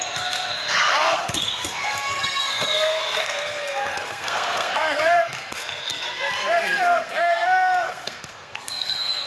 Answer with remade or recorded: remade